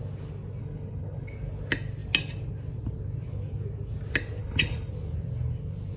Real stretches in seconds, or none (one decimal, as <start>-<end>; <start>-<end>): 0.0-0.6; 1.3-4.4; 4.9-6.0